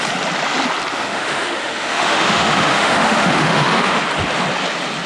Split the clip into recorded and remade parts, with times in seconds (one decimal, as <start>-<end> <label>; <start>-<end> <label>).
0.0-0.9 recorded; 0.9-4.0 remade; 4.0-5.1 recorded